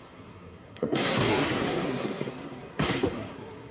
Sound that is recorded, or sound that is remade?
remade